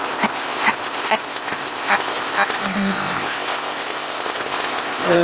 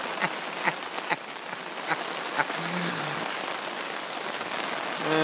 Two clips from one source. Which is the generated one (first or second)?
first